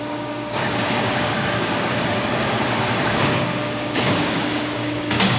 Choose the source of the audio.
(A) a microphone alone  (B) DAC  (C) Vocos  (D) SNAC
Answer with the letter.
B